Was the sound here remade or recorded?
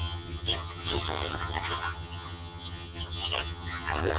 remade